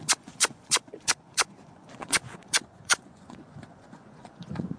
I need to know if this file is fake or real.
fake